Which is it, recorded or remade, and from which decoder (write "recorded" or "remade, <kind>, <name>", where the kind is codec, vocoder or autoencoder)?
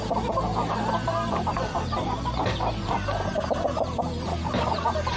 remade, vocoder, BigVGAN v2